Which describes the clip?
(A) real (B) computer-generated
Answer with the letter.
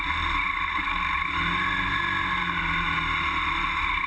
A